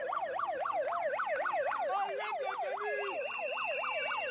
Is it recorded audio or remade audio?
recorded